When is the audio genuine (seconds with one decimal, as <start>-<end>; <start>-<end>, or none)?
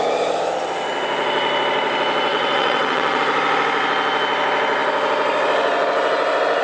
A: 0.0-2.3; 3.2-6.6